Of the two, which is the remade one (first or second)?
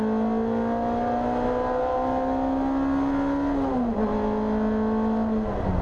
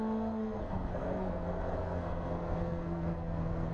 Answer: second